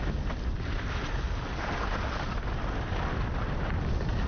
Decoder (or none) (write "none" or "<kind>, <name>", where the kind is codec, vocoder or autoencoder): none